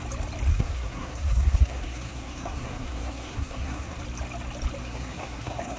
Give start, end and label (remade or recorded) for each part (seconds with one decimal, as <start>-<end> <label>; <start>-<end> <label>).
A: 0.0-0.5 recorded; 0.5-4.0 remade; 4.0-4.8 recorded; 4.8-5.8 remade